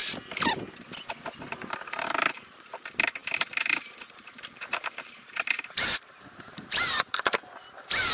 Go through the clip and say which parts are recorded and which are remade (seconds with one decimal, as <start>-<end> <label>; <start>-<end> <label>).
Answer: 0.0-1.4 recorded; 1.4-8.1 remade